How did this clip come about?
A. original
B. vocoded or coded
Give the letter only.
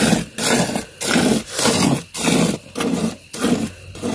A